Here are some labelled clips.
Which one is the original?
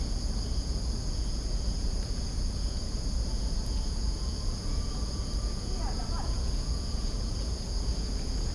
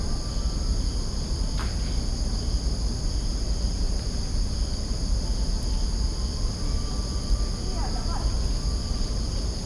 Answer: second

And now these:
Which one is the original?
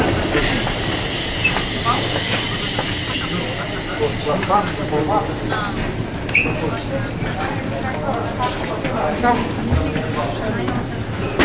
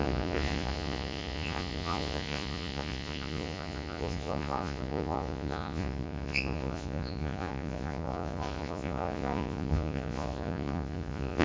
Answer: first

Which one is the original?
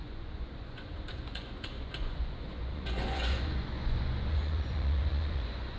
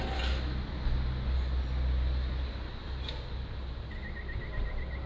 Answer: second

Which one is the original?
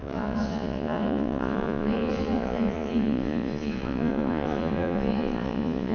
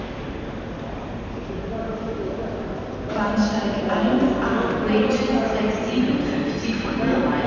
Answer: second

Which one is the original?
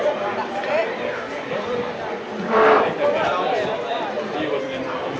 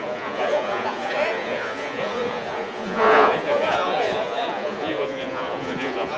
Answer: first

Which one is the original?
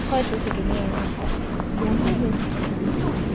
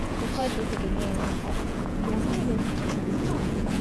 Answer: first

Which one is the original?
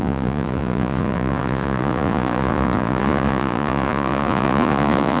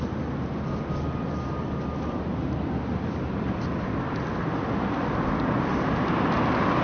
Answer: second